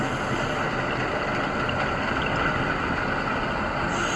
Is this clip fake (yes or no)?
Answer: no